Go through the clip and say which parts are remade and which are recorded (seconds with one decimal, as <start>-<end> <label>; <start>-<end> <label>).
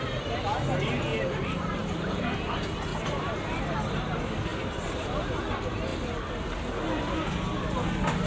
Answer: 0.0-1.1 recorded; 1.1-1.8 remade; 1.8-2.9 recorded; 2.9-3.6 remade; 3.6-4.5 recorded; 4.5-5.1 remade; 5.1-8.3 recorded